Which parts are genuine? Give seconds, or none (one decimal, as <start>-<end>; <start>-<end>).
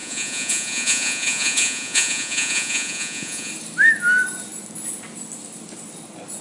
3.5-6.4